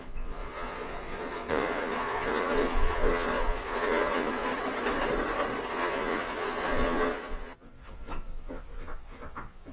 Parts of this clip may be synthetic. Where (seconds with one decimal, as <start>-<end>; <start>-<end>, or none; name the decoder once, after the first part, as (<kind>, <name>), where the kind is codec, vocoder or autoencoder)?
0.0-4.5 (vocoder, Vocos); 5.7-9.7